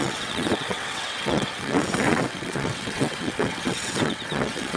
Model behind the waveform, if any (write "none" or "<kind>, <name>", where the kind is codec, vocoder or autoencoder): vocoder, WaveNeXt